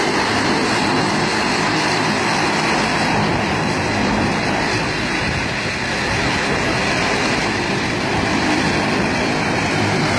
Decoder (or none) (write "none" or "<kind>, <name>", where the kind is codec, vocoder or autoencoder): vocoder, BigVGAN v2